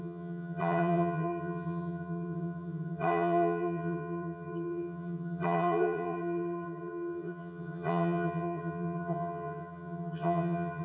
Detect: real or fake fake